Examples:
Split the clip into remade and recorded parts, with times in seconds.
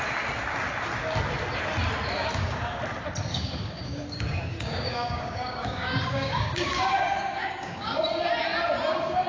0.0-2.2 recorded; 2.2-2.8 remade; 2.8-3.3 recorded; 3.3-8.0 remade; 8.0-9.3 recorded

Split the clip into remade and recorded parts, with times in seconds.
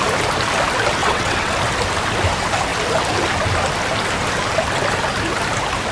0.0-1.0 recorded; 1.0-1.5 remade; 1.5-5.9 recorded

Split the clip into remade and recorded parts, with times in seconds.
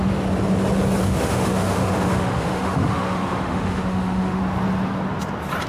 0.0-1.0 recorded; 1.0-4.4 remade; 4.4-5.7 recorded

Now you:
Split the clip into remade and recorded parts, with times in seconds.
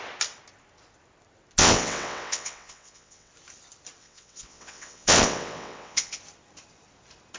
0.0-1.6 recorded; 1.6-3.3 remade; 3.3-4.0 recorded; 4.0-6.2 remade; 6.2-7.4 recorded